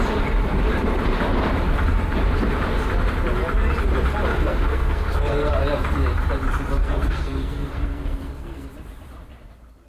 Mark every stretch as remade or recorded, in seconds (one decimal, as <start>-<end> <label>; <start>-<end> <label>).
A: 0.0-4.3 recorded; 4.3-5.5 remade; 5.5-6.8 recorded; 6.8-8.7 remade; 8.7-9.9 recorded